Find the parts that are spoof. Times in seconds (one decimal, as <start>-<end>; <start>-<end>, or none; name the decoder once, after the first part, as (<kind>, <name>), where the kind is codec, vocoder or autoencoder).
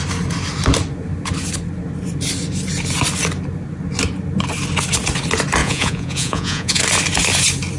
5.6-6.8 (vocoder, Vocos)